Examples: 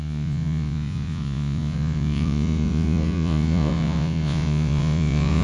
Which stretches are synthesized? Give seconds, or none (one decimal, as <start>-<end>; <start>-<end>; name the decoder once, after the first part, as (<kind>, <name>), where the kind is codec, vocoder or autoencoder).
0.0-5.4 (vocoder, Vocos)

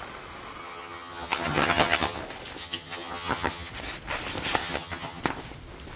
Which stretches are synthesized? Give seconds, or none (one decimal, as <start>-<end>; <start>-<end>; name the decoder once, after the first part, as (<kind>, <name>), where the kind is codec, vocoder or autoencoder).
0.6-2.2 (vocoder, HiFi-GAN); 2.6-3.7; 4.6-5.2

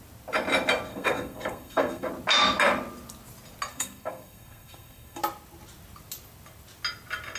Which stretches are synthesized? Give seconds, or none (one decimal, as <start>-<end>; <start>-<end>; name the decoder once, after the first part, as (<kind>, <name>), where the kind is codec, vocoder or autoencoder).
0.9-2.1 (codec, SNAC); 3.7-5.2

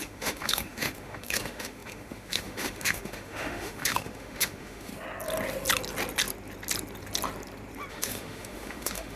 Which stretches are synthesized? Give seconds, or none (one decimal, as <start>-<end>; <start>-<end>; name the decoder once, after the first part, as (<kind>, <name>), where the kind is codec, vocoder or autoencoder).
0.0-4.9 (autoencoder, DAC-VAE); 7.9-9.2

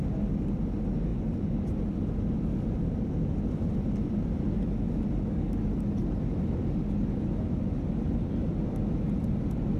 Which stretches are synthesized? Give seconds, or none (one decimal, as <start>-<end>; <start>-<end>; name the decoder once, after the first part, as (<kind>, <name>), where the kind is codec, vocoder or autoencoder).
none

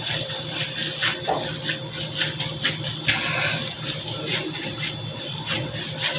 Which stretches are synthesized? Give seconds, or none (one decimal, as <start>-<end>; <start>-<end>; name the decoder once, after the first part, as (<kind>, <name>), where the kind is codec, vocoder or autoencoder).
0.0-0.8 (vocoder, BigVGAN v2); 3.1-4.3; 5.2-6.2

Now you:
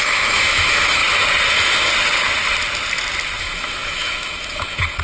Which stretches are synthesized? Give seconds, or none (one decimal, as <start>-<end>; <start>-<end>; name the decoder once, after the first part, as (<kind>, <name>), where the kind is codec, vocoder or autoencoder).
0.0-1.0 (autoencoder, DAC-VAE); 1.5-1.9; 3.4-5.0

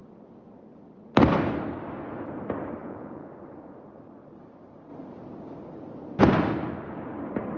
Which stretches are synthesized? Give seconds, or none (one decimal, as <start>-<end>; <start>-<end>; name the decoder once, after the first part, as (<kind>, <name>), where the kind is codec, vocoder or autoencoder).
2.8-3.3 (vocoder, Vocos)